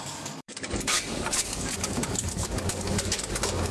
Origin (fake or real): fake